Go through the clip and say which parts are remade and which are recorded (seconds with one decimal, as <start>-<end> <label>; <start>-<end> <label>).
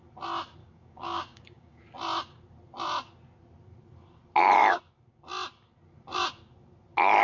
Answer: 0.0-0.6 recorded; 0.6-1.8 remade; 1.8-7.2 recorded